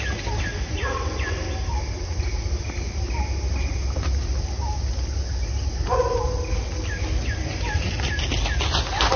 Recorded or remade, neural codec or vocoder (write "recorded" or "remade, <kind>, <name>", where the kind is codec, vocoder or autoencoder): recorded